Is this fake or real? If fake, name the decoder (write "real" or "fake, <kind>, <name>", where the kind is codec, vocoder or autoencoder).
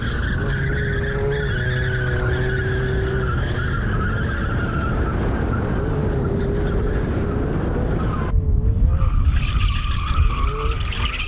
real